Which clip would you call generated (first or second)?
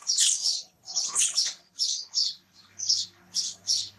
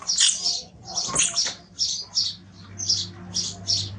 first